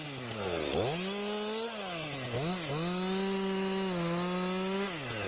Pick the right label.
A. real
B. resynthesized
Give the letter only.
A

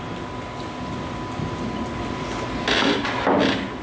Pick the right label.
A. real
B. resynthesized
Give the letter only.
A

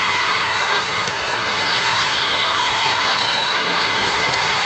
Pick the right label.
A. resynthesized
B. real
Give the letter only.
A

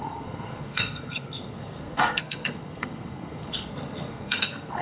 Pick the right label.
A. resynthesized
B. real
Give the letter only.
A